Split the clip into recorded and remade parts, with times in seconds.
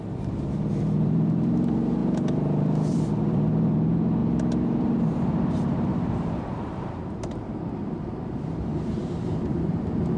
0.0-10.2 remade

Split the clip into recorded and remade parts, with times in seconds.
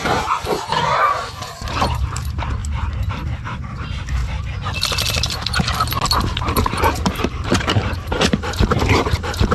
0.0-2.6 remade; 2.6-3.1 recorded; 3.1-4.2 remade; 4.2-6.2 recorded; 6.2-9.5 remade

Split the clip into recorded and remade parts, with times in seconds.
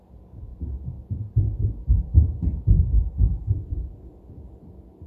0.0-5.1 recorded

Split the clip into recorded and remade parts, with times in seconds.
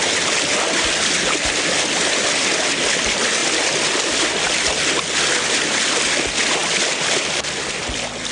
0.0-3.4 recorded; 3.4-4.7 remade; 4.7-6.6 recorded; 6.6-7.8 remade; 7.8-8.3 recorded